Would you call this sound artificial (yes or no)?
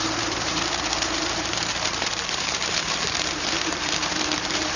yes